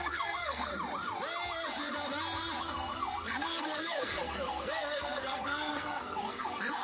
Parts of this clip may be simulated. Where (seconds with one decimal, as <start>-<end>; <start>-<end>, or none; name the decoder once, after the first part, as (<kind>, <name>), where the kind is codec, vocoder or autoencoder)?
0.0-0.7 (codec, SNAC); 2.6-6.8